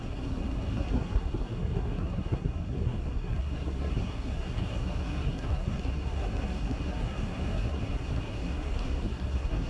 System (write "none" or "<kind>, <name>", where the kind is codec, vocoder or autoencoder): codec, SNAC